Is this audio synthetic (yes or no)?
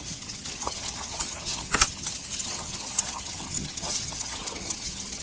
yes